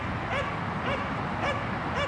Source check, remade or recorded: recorded